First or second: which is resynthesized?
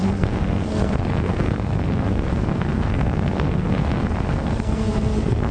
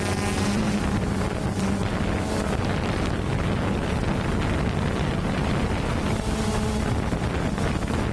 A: first